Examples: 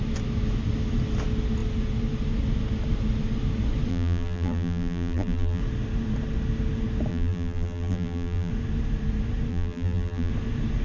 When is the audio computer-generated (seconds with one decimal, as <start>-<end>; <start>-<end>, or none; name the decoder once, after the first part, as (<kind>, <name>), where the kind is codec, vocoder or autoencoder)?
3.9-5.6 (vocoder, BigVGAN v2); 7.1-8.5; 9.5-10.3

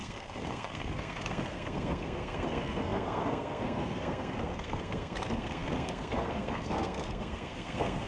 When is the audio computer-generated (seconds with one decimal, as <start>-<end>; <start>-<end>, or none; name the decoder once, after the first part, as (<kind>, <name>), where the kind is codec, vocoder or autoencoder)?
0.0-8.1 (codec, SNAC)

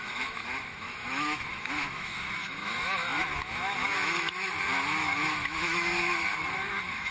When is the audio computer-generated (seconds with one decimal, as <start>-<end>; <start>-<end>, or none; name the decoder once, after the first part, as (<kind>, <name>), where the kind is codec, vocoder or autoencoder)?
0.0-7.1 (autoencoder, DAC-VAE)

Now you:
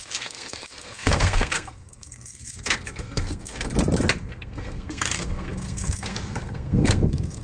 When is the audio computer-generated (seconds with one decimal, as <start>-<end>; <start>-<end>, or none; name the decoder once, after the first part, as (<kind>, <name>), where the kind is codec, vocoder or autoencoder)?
0.0-3.7 (codec, SNAC); 4.2-7.4

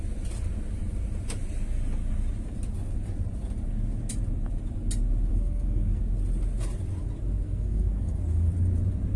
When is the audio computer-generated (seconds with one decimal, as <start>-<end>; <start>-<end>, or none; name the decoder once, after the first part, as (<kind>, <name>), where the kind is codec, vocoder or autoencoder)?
5.3-6.0 (codec, SNAC); 7.3-8.5

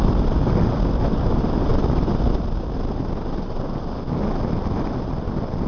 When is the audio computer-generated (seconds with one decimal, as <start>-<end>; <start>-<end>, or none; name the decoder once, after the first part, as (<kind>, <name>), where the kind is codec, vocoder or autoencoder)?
none